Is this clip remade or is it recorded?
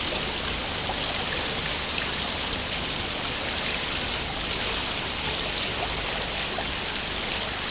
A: recorded